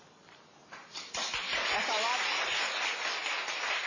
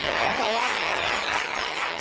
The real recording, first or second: first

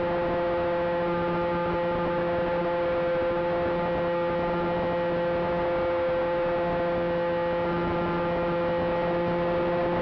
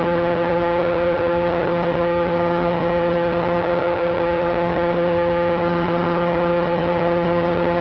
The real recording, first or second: first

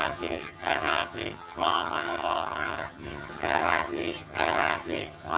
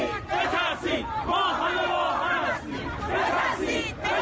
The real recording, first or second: second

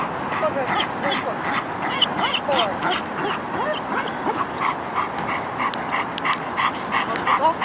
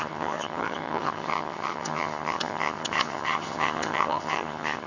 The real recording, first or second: first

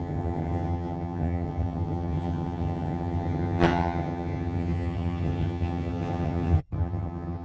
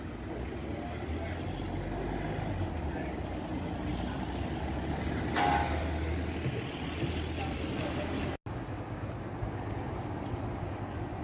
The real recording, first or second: second